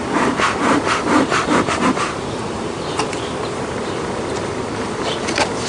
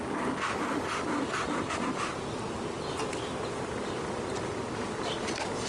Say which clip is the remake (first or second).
first